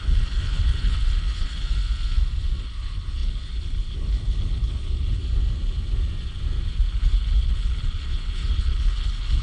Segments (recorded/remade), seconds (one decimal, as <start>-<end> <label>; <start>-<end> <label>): 0.0-1.8 remade; 1.8-2.6 recorded; 2.6-5.2 remade; 5.2-6.9 recorded; 6.9-9.4 remade